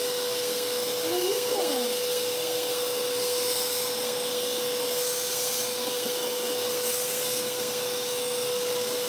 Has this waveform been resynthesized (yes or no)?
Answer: yes